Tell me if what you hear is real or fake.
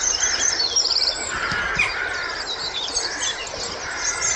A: fake